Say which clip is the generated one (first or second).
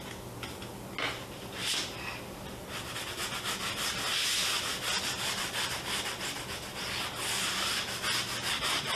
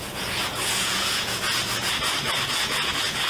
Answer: second